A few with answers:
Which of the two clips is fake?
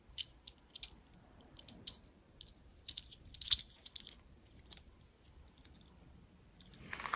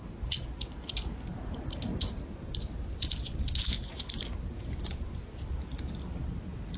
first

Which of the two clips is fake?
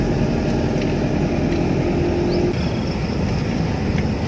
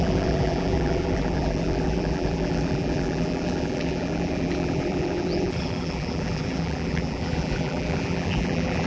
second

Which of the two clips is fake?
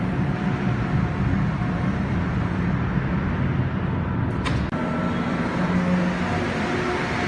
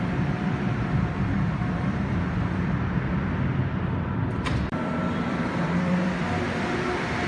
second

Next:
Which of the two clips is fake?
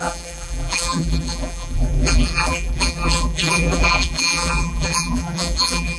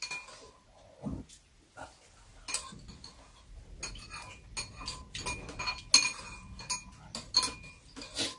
first